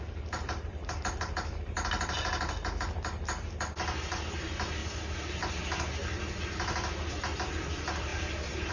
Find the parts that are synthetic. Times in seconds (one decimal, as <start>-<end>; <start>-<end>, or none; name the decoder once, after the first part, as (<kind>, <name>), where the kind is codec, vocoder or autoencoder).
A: 8.1-8.7 (vocoder, BigVGAN v2)